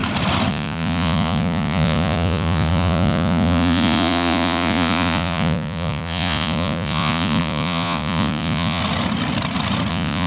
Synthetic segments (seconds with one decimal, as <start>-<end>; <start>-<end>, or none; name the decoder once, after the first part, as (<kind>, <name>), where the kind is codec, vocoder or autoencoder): 0.5-8.8 (vocoder, Vocos); 9.9-10.3